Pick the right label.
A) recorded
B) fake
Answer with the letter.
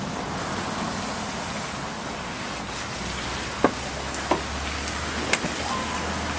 A